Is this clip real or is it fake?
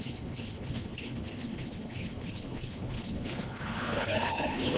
fake